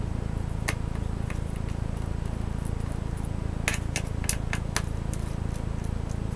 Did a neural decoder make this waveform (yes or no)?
no